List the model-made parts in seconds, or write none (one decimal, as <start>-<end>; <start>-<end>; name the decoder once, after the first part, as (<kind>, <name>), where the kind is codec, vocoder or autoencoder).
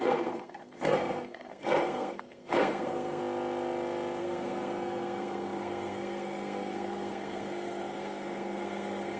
0.0-3.2 (codec, SNAC); 4.2-9.2